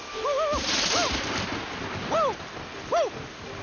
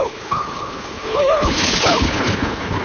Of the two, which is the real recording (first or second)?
first